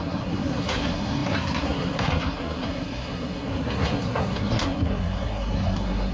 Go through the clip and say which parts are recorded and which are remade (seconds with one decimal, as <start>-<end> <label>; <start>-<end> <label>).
0.0-6.1 remade